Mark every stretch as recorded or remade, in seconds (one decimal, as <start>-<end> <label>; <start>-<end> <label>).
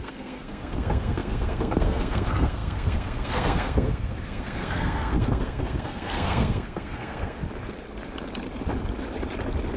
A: 0.0-7.4 remade; 7.4-9.8 recorded